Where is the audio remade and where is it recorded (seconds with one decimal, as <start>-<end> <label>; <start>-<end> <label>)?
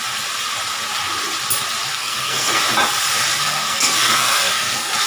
0.0-1.9 recorded; 1.9-2.6 remade; 2.6-3.4 recorded; 3.4-5.1 remade